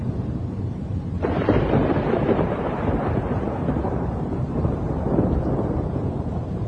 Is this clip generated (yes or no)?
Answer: yes